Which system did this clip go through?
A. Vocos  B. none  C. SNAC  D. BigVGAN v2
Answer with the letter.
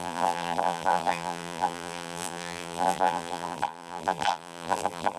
D